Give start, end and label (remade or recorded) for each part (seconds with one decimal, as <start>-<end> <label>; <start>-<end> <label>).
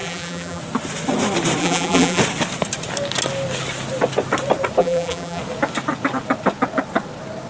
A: 0.0-0.6 remade; 0.6-1.6 recorded; 1.6-2.2 remade; 2.2-4.8 recorded; 4.8-5.4 remade; 5.4-7.5 recorded